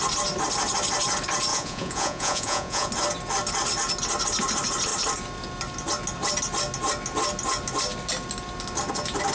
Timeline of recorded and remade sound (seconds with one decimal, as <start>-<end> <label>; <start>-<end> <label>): 0.0-1.5 recorded; 1.5-2.9 remade; 2.9-9.3 recorded